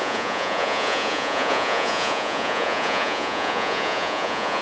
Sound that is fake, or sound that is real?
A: fake